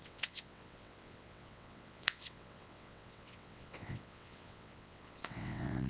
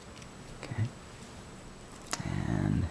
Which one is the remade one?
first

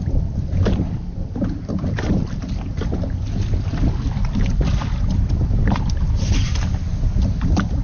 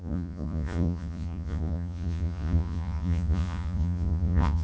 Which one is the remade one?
second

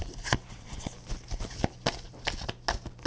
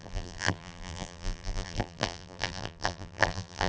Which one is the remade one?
second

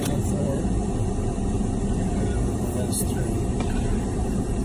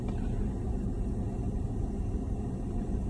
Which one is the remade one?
first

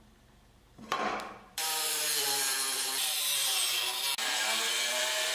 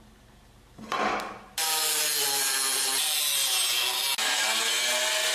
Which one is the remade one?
first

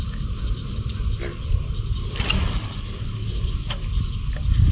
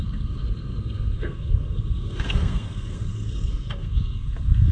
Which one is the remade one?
second